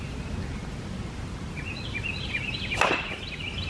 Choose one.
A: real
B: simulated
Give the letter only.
A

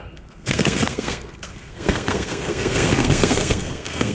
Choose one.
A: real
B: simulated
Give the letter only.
B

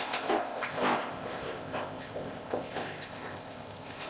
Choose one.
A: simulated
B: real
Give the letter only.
A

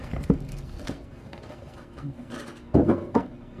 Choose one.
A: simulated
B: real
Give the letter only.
A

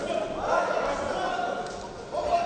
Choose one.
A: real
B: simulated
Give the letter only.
A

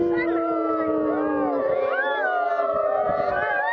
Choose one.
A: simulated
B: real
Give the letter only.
B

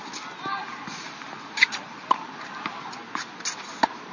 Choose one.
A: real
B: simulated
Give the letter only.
A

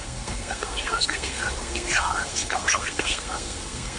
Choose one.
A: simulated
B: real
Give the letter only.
A